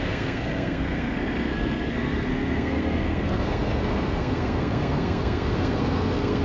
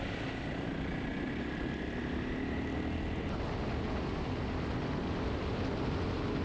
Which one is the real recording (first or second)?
second